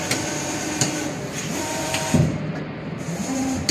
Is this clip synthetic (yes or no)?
yes